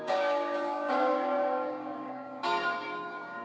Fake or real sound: fake